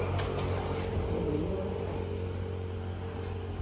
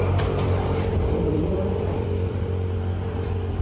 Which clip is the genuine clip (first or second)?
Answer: first